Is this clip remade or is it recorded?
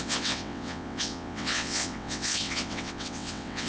remade